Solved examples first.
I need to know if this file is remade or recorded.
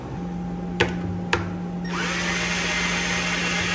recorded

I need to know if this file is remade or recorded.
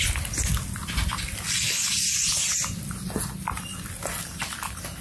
recorded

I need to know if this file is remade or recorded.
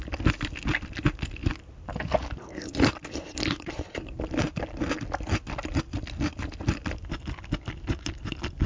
recorded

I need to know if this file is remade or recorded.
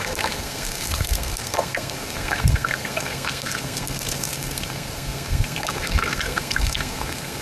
remade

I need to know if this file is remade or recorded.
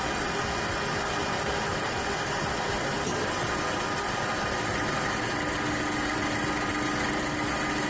recorded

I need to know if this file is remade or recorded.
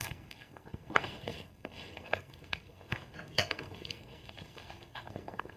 remade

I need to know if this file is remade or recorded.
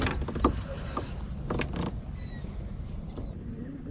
recorded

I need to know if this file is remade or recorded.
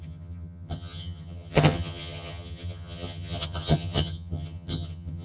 remade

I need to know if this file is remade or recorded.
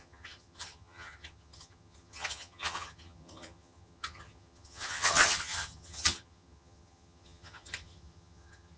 remade